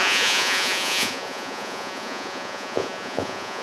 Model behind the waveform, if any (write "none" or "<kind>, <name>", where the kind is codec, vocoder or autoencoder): vocoder, Vocos